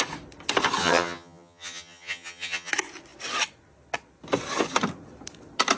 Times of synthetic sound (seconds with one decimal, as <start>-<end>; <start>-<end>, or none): 0.8-2.7